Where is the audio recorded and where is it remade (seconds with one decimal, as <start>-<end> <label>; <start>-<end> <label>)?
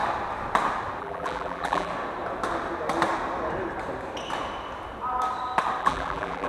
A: 0.0-1.0 recorded; 1.0-1.9 remade; 1.9-5.8 recorded; 5.8-6.5 remade